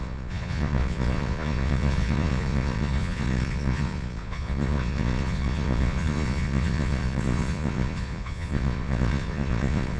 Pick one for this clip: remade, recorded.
remade